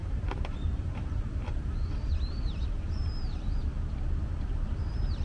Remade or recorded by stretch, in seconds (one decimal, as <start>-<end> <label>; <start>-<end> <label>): 0.0-3.7 remade; 3.7-4.8 recorded; 4.8-5.2 remade